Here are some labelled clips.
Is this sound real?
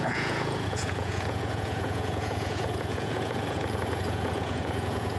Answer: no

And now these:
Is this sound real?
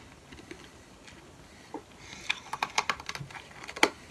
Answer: yes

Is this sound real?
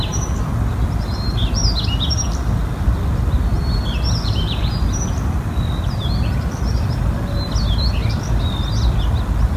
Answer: yes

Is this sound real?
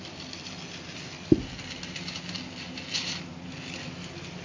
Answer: yes